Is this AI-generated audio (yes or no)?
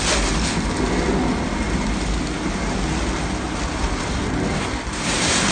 no